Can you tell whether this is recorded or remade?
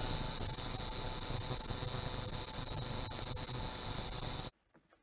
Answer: recorded